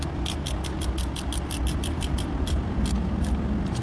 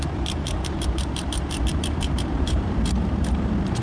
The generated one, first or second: second